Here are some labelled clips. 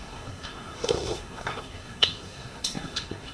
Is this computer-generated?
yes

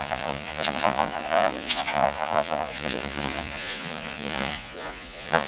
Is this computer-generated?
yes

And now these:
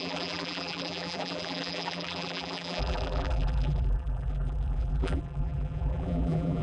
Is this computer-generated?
yes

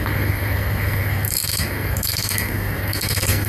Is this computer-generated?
yes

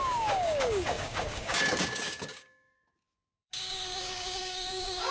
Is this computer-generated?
yes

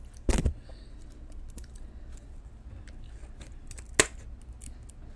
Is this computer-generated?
no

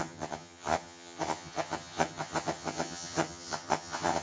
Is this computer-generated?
yes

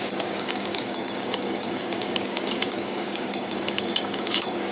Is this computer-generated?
yes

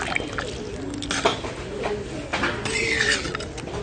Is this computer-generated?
no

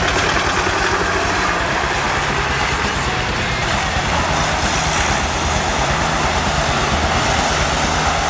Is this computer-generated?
no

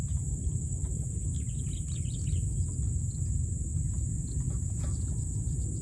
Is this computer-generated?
no